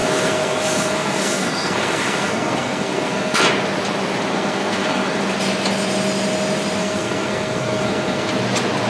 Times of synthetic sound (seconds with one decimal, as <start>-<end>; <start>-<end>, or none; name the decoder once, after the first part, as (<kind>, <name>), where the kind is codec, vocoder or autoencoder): 0.0-3.4 (codec, SNAC); 4.3-5.2; 6.8-8.3